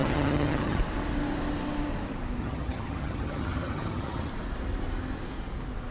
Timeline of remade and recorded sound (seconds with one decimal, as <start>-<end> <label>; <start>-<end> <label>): 0.0-0.8 remade; 0.8-2.4 recorded; 2.4-4.3 remade; 4.3-5.9 recorded